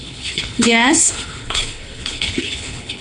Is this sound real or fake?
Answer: fake